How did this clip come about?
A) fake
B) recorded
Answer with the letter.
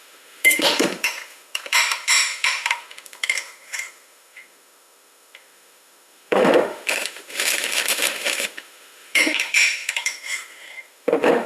A